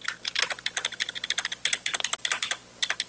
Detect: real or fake real